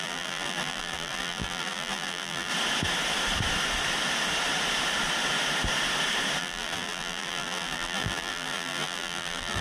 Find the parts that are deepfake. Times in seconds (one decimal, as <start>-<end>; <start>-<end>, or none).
0.0-2.5; 6.4-9.6